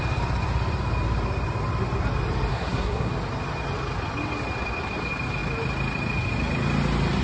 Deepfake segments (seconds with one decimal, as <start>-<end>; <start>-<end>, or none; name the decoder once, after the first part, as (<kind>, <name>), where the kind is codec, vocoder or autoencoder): 2.5-3.1 (codec, SNAC)